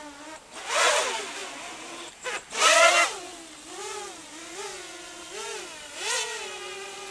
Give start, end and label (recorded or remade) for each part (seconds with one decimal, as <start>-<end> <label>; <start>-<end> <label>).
0.0-7.1 recorded